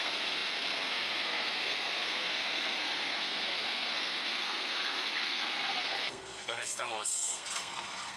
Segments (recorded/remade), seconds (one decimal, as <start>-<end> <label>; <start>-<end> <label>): 0.0-8.2 remade